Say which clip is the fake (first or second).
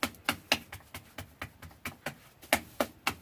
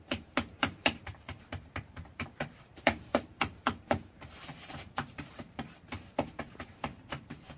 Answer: second